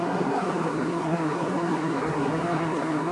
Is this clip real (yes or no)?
no